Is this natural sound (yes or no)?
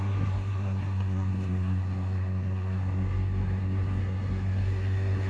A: no